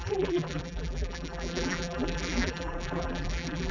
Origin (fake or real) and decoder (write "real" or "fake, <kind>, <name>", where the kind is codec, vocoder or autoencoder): fake, vocoder, BigVGAN v2